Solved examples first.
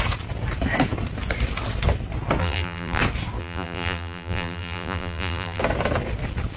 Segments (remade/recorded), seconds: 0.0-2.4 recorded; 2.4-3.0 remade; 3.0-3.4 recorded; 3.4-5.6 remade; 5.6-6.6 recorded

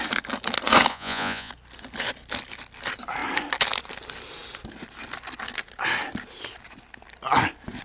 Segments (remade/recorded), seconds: 0.0-0.9 recorded; 0.9-1.5 remade; 1.5-7.8 recorded

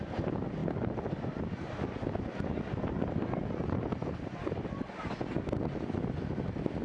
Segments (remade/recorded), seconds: 0.0-6.8 recorded